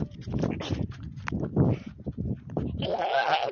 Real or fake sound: real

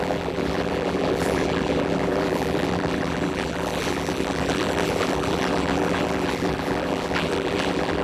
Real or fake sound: fake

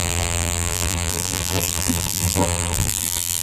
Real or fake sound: fake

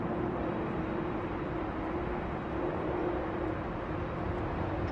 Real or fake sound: real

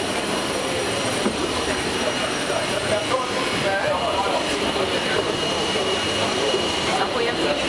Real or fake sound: fake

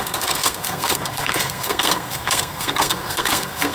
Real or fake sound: fake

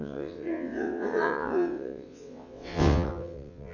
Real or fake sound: fake